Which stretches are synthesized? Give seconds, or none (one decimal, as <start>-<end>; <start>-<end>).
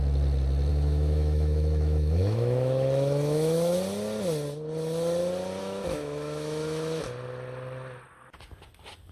0.7-3.7; 5.6-7.0